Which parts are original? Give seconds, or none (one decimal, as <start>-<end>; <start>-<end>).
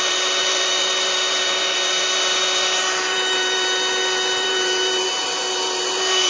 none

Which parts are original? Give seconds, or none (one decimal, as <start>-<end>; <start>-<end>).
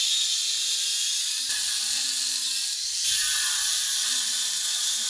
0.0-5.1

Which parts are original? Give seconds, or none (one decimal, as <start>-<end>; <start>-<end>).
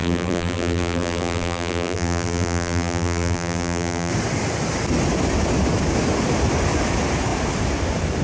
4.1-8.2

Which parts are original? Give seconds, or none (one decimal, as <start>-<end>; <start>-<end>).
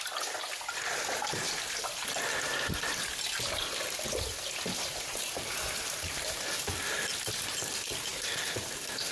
0.0-9.1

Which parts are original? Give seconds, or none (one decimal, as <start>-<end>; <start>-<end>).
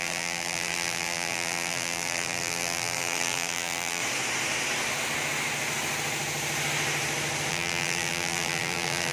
4.0-7.5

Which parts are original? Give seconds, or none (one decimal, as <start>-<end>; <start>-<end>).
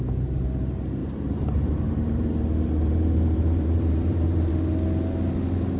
0.0-1.0; 4.5-5.8